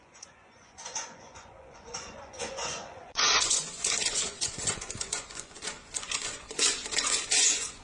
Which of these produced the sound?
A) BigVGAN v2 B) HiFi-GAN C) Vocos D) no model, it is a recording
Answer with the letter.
C